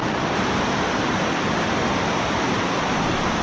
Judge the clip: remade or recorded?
recorded